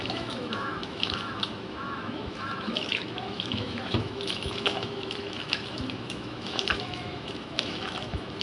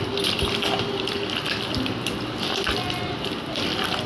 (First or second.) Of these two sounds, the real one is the second